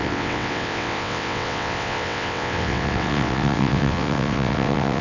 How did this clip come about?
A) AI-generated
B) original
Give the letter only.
A